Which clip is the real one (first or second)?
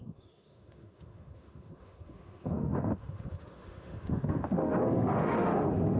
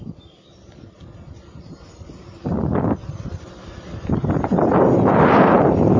second